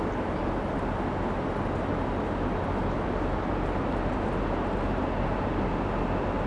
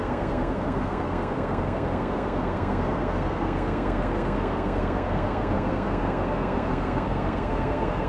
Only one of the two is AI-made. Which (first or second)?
second